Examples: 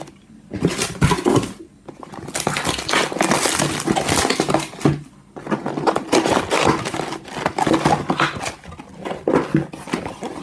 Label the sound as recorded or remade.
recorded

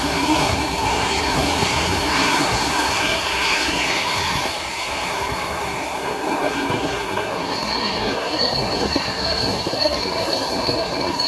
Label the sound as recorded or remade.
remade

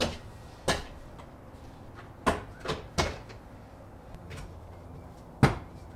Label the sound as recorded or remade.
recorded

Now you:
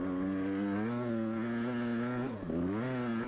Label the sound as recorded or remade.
recorded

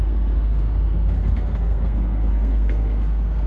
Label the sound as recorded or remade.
remade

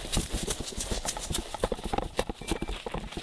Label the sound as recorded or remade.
recorded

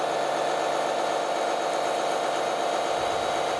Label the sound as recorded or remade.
recorded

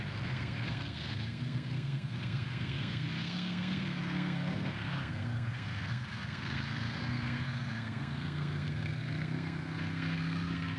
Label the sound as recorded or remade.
remade